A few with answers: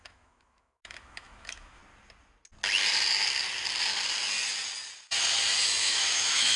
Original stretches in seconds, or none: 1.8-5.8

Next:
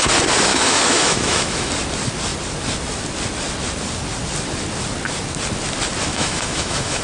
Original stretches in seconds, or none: 0.0-0.5; 1.7-6.1

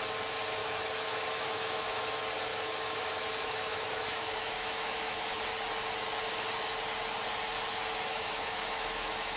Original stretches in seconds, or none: 0.0-0.6; 2.0-2.5; 5.4-8.1

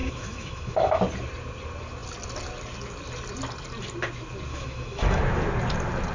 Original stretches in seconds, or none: 1.0-4.5; 5.2-6.1

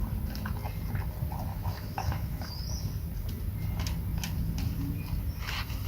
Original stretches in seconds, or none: 0.0-1.5; 2.5-5.9